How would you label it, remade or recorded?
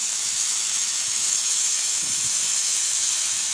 remade